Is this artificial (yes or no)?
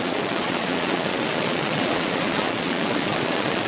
yes